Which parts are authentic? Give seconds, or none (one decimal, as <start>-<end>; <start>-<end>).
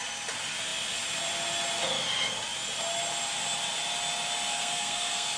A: 0.0-4.5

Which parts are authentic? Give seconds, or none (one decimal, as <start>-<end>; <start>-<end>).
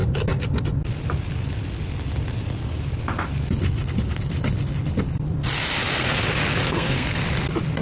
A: 0.0-6.6; 7.2-7.8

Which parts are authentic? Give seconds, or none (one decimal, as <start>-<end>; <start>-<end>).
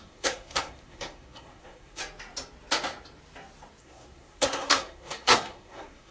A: 2.0-3.8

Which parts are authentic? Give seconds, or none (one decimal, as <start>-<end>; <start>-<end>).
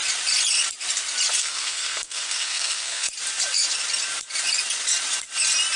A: 0.0-1.4; 3.1-5.8